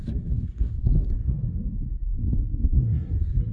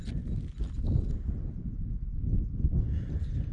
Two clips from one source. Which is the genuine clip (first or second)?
second